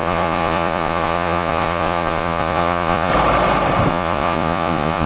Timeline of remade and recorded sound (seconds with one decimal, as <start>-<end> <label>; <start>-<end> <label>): 0.0-3.1 remade; 3.1-3.9 recorded; 3.9-5.1 remade